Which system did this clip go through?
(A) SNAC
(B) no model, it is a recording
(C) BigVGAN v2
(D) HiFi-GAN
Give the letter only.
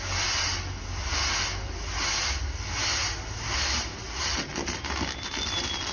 B